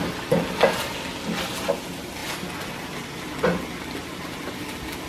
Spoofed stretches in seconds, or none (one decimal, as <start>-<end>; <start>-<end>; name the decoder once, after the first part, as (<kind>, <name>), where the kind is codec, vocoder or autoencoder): none